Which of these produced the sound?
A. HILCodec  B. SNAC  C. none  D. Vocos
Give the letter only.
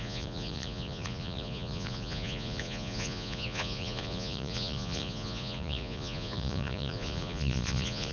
D